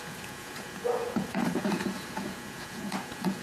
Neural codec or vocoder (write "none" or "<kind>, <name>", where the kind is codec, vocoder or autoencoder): vocoder, Vocos